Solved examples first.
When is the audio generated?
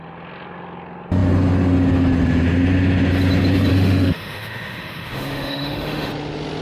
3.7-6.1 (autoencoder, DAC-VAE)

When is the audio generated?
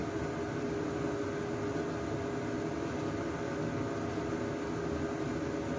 none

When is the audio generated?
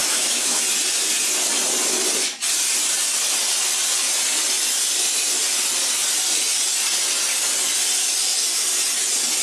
0.0-0.6 (autoencoder, DAC-VAE)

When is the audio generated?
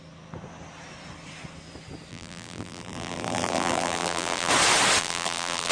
2.1-4.5 (vocoder, BigVGAN v2); 5.0-5.7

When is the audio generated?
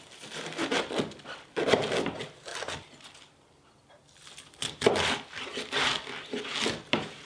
none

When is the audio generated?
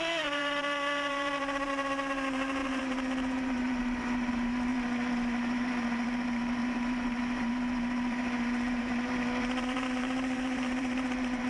0.0-11.5 (vocoder, BigVGAN v2)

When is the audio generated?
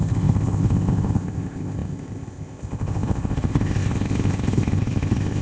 0.0-5.4 (codec, ZipCodec)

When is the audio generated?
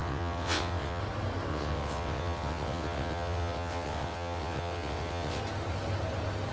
0.0-1.0 (vocoder, WaveNeXt); 1.5-5.4